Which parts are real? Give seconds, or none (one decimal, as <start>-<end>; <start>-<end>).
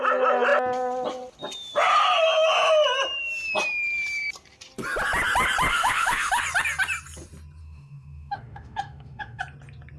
0.0-5.7; 6.4-7.6; 9.4-10.0